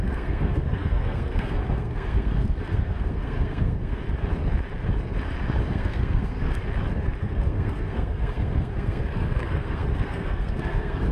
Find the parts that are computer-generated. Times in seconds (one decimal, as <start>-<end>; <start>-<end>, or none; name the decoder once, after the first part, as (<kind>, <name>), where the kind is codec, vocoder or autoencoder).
0.0-4.0 (codec, SNAC); 5.7-6.6; 7.2-11.1